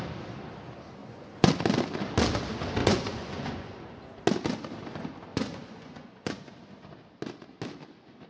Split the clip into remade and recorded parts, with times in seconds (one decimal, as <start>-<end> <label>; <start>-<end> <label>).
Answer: 0.0-1.0 recorded; 1.0-1.5 remade; 1.5-2.8 recorded; 2.8-3.8 remade; 3.8-5.3 recorded; 5.3-6.5 remade; 6.5-8.3 recorded